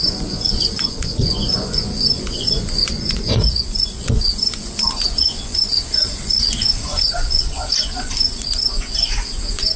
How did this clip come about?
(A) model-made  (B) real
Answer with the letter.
A